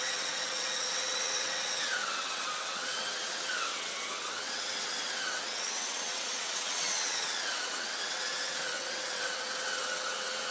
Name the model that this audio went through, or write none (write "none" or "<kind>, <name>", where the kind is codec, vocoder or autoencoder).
vocoder, WaveNeXt